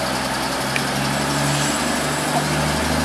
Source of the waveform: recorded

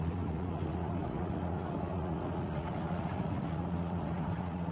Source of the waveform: remade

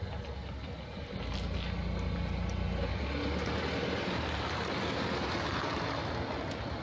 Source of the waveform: recorded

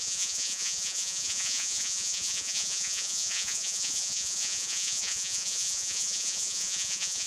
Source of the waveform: remade